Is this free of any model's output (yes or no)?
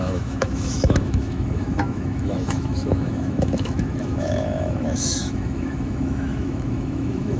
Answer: no